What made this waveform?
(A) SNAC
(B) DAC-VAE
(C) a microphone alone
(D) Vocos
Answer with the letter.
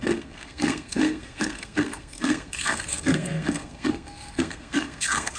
A